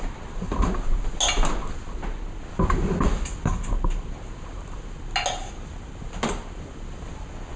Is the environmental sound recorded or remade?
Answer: recorded